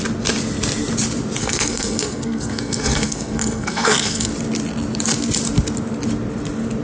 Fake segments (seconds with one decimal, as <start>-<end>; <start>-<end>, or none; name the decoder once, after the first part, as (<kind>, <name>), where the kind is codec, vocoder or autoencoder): 1.4-4.3 (codec, SNAC)